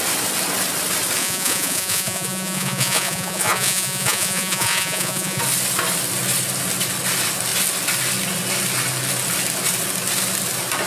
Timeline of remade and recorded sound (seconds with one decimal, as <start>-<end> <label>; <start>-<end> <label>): 0.0-1.2 recorded; 1.2-5.4 remade; 5.4-10.9 recorded